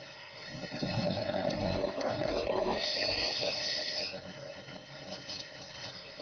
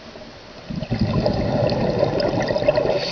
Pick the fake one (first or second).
first